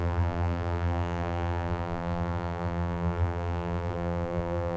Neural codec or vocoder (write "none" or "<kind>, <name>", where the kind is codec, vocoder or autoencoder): vocoder, BigVGAN v2